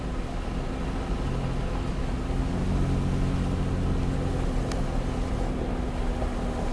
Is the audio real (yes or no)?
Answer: yes